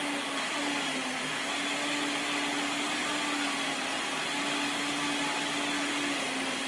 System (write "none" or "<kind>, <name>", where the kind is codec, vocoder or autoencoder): none